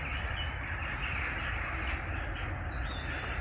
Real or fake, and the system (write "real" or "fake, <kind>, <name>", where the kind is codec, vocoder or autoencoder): real